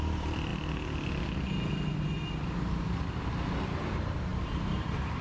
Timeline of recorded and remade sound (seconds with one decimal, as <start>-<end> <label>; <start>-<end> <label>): 0.0-0.5 remade; 0.5-3.6 recorded; 3.6-5.2 remade